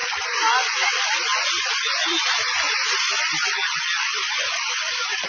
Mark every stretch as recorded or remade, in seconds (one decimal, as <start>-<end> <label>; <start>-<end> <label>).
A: 0.0-5.3 recorded